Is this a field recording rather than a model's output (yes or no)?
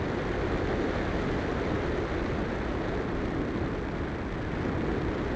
yes